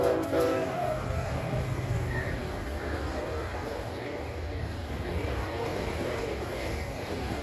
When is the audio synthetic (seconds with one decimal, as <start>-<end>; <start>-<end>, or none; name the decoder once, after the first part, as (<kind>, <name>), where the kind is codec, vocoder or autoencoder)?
0.0-7.4 (codec, DAC)